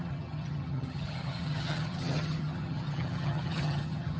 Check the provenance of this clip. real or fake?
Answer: fake